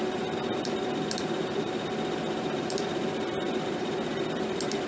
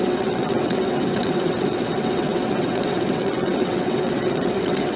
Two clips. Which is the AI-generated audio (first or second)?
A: second